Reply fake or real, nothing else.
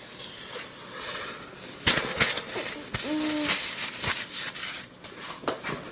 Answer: real